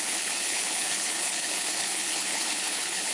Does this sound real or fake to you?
fake